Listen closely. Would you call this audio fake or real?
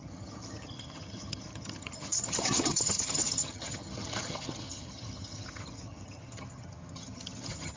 fake